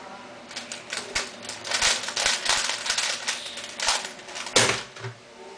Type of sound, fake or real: real